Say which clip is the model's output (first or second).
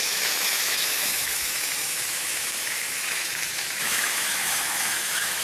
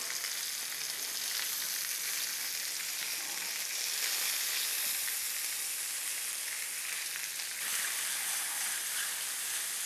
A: first